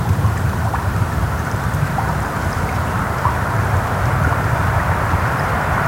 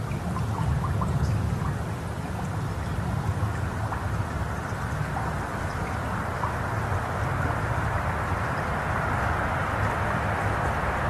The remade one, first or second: first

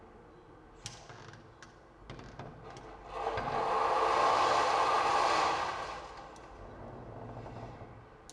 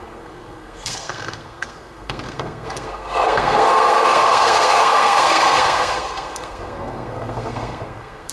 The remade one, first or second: second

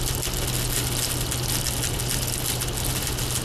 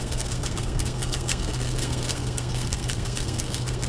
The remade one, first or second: second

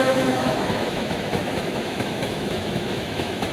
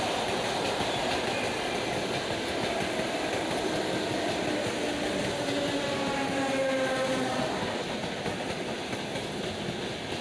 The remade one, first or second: first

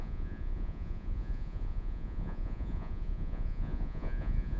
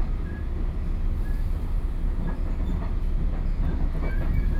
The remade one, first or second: first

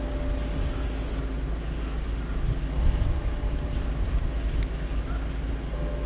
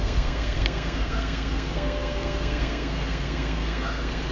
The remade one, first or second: second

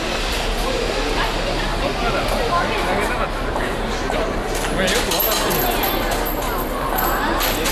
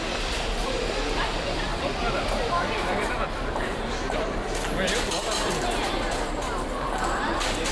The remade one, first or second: second